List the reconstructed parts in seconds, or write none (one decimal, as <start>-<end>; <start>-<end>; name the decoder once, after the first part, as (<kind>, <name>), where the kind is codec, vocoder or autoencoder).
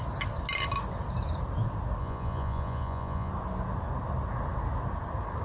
2.0-3.3 (vocoder, Vocos)